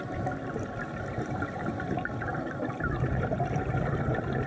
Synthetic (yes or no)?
no